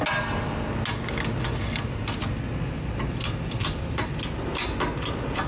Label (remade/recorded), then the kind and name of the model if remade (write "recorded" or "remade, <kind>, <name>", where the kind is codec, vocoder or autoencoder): recorded